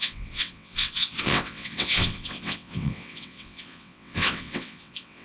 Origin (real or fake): fake